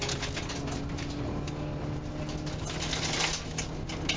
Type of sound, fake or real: real